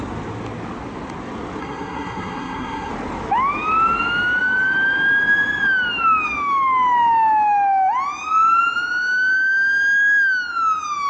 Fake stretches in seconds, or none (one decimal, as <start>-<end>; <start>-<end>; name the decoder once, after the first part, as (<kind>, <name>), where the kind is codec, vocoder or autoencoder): 1.6-2.9 (codec, SNAC)